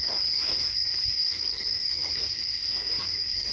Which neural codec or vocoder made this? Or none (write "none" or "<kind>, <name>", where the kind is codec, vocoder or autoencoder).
codec, SNAC